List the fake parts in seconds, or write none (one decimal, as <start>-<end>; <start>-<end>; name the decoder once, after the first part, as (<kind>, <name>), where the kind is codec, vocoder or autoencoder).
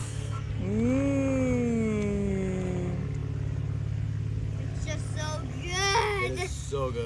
0.0-0.5 (codec, SNAC)